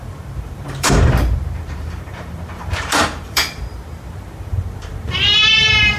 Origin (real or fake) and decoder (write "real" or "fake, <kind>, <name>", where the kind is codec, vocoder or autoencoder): fake, vocoder, BigVGAN v2